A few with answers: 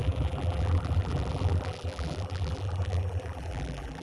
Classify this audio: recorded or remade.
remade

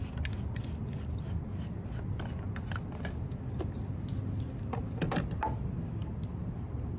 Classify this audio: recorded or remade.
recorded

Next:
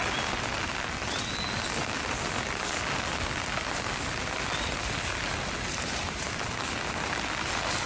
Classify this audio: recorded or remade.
recorded